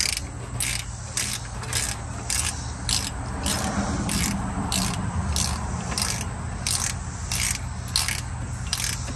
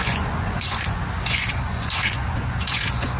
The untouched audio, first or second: first